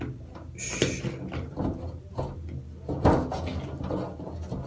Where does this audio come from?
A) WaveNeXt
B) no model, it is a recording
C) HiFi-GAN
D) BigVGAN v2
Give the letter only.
B